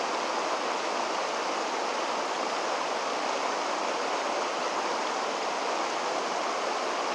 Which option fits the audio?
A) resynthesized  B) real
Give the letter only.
B